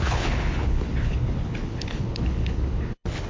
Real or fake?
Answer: fake